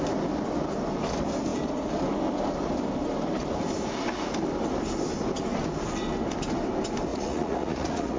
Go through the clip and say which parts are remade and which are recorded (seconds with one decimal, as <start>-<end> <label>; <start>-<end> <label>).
0.0-7.1 recorded; 7.1-8.2 remade